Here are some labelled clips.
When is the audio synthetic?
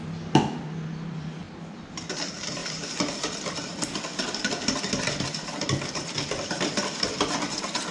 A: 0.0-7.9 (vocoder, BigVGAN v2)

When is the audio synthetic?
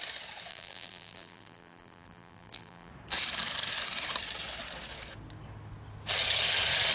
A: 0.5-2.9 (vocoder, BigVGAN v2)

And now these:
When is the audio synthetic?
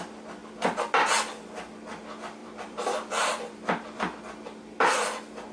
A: 2.4-4.2 (vocoder, BigVGAN v2)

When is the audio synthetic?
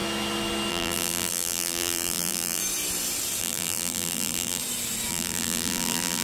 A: 0.7-2.6 (vocoder, BigVGAN v2); 3.4-4.6; 5.1-6.2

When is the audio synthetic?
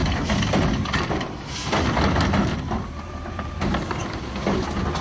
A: 2.5-3.6 (vocoder, BigVGAN v2)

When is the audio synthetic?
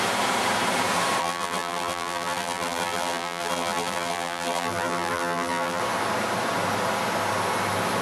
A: 1.2-5.8 (vocoder, BigVGAN v2)